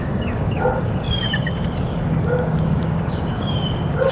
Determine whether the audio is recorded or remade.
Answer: remade